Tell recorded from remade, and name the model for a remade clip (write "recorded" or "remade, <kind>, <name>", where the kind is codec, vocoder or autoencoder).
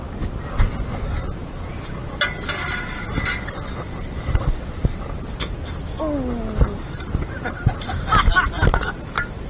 recorded